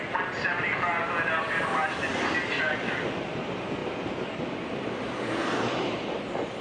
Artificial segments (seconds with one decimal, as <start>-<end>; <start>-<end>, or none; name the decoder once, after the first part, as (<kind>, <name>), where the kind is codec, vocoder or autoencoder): 3.8-5.4 (vocoder, BigVGAN v2)